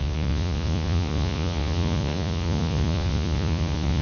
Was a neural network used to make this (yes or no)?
yes